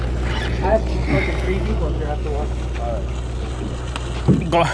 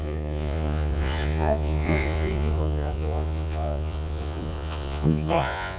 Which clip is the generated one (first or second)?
second